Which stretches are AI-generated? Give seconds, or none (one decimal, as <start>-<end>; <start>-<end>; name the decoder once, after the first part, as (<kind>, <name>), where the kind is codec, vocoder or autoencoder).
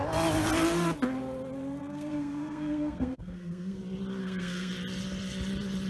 1.8-3.8 (codec, SNAC); 4.2-4.7